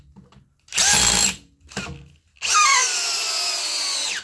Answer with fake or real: real